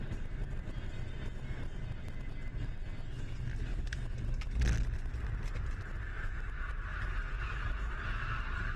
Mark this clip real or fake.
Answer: real